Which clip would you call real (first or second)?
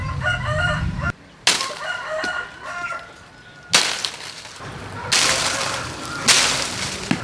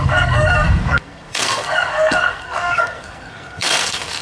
first